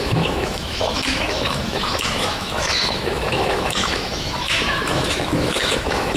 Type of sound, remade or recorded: remade